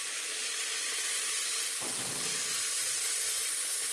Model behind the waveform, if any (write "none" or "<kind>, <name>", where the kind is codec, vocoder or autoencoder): none